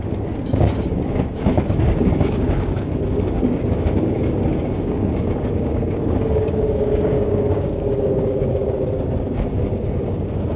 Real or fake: fake